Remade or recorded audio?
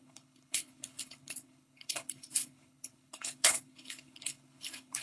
remade